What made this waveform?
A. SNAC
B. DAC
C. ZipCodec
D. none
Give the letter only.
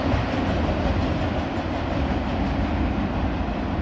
D